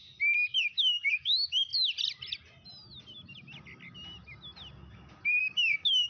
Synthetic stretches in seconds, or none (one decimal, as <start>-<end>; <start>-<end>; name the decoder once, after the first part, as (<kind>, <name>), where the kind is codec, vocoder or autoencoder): 0.6-1.7 (codec, DAC); 5.4-6.1